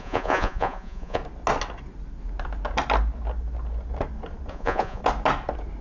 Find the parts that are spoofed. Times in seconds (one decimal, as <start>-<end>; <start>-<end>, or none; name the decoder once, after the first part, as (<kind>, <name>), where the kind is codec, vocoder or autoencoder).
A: 0.0-1.2 (vocoder, Vocos); 4.5-5.0